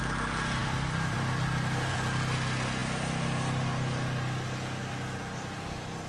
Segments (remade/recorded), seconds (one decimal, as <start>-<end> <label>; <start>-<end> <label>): 0.0-0.6 recorded; 0.6-1.9 remade; 1.9-6.1 recorded